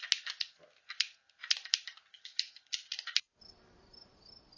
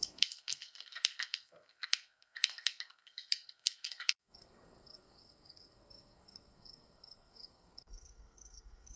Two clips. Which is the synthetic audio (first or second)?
second